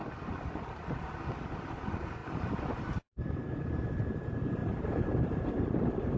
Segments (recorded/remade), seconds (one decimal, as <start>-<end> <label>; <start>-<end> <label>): 0.0-1.2 remade; 1.2-2.2 recorded; 2.2-2.8 remade; 2.8-4.6 recorded; 4.6-5.5 remade; 5.5-6.2 recorded